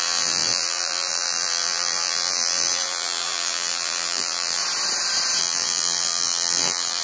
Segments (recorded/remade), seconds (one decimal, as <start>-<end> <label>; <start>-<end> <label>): 0.0-4.6 remade; 4.6-5.4 recorded; 5.4-7.0 remade